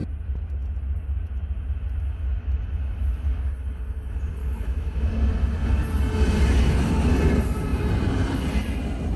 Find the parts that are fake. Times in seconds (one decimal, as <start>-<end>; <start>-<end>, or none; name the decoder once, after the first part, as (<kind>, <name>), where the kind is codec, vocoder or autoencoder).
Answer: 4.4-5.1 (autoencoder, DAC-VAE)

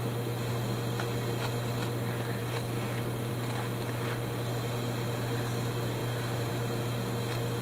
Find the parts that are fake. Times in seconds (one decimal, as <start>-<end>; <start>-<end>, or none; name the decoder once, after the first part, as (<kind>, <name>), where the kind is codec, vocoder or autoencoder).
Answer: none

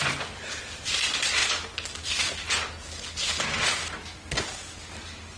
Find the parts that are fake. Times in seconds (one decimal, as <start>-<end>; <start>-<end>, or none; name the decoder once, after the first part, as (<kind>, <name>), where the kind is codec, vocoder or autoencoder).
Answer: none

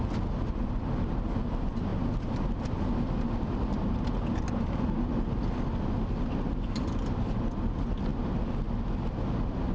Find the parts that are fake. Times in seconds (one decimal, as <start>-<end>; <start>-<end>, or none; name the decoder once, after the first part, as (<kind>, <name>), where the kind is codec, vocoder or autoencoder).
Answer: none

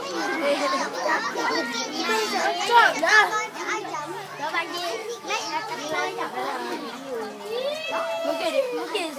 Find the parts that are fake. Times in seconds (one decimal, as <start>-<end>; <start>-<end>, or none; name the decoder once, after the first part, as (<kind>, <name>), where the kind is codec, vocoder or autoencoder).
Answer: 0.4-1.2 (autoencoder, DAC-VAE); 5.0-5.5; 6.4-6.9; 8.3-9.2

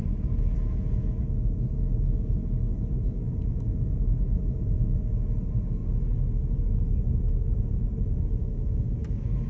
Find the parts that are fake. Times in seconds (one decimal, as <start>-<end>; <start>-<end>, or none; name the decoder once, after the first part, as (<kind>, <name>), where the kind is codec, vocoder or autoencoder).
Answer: 0.0-5.0 (autoencoder, DAC-VAE); 8.4-9.5